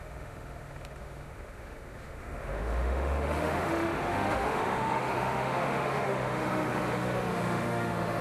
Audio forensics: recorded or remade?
remade